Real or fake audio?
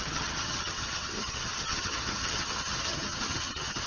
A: fake